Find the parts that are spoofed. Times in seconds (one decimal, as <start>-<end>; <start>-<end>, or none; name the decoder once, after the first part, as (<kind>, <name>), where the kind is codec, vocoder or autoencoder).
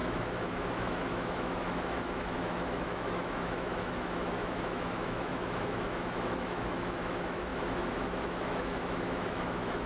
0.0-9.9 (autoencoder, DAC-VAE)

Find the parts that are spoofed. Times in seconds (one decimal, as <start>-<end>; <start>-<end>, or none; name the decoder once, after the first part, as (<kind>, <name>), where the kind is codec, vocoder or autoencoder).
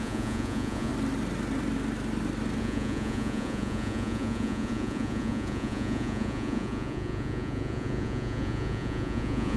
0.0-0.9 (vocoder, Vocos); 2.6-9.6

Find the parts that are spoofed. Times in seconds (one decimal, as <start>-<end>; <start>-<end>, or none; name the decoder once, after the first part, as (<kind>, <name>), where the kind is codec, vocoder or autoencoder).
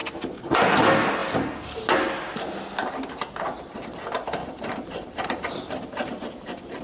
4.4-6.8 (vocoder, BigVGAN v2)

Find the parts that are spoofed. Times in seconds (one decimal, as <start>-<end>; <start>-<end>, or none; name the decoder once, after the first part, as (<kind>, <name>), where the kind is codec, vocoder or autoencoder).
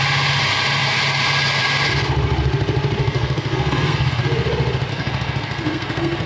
3.0-4.2 (codec, SNAC); 4.9-6.3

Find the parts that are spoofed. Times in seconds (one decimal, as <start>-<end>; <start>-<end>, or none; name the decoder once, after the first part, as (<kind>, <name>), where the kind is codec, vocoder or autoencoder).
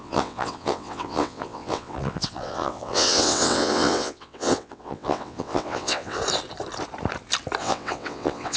0.0-6.2 (vocoder, WaveNeXt); 7.6-8.6